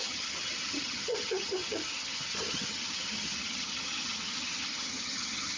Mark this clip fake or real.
fake